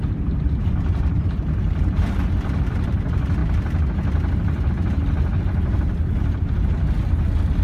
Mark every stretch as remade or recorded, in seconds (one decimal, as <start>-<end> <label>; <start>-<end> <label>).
0.0-7.6 recorded